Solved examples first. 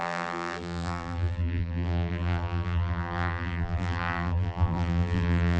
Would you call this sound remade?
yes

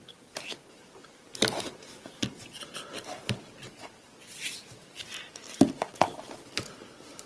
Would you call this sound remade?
no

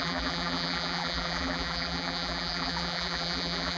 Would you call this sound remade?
yes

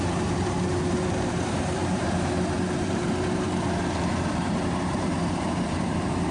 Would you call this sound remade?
yes